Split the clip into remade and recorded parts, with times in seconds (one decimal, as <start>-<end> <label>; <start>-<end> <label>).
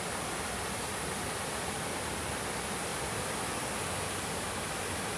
0.0-5.2 recorded